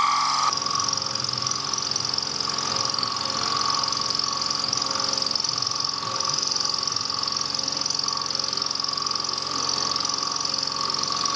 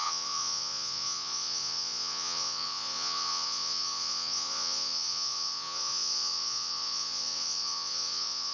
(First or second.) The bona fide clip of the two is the first